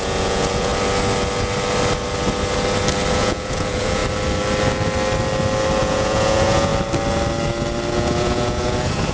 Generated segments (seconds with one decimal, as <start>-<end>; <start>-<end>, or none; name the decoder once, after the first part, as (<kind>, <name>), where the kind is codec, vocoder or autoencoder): 0.0-0.7 (vocoder, Vocos); 3.1-4.0; 5.8-6.7; 7.9-9.1